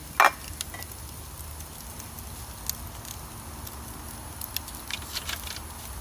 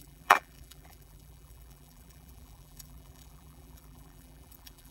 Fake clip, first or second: second